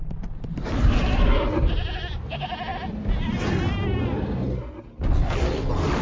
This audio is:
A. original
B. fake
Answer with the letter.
A